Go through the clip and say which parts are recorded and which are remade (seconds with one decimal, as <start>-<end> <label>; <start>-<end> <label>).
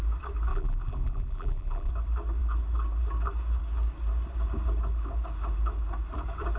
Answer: 0.0-0.5 recorded; 0.5-1.9 remade; 1.9-6.6 recorded